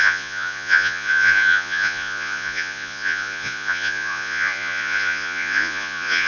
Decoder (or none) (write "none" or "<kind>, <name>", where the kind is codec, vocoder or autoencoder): vocoder, Vocos